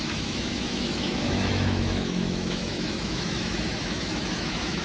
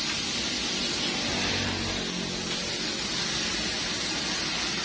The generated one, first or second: first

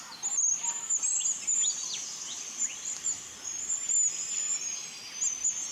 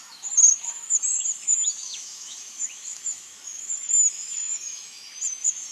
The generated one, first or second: second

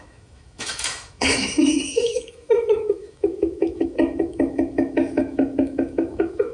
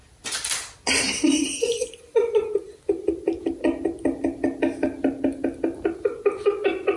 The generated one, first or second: first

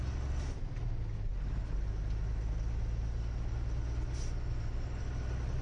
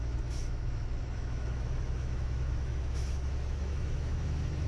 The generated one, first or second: second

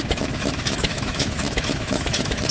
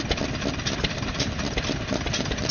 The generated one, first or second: first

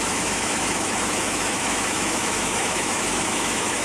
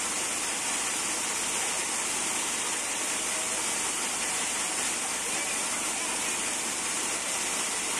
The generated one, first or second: first